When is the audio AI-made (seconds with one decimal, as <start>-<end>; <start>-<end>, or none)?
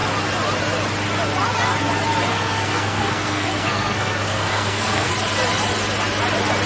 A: 2.3-5.1